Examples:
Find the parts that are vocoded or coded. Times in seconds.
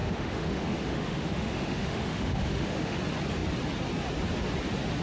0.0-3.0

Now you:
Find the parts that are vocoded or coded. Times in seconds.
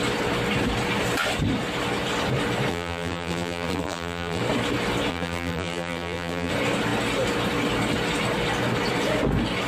2.7-4.4; 5.1-6.5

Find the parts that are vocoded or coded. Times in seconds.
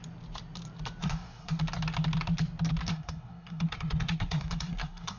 1.0-1.6; 2.9-5.2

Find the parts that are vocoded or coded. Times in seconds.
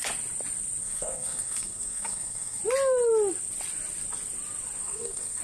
0.8-2.6; 4.8-5.4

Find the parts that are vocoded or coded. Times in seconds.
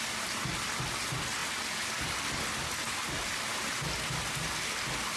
none